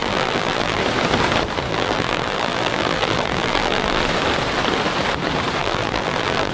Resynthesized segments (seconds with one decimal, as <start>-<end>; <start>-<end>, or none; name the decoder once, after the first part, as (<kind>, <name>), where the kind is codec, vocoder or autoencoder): 0.0-0.8 (vocoder, BigVGAN v2); 1.7-4.0; 5.6-6.5